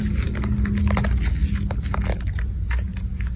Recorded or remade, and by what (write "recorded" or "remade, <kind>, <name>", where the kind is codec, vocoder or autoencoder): recorded